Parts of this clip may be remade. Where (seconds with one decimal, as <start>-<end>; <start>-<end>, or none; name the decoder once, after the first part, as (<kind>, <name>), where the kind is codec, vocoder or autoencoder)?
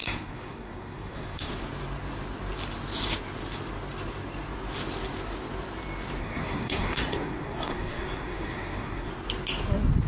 0.0-1.5 (codec, SNAC); 6.2-9.1